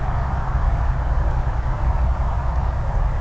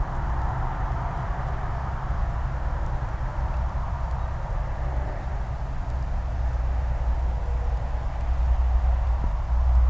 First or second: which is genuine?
second